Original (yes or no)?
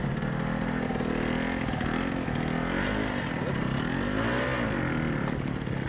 yes